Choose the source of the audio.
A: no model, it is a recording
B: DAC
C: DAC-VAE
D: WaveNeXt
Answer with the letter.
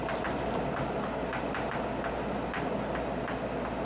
A